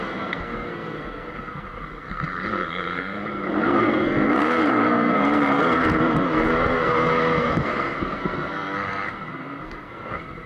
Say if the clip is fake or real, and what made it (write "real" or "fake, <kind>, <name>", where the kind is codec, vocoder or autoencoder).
fake, codec, SNAC